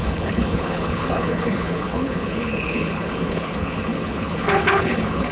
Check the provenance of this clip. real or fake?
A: fake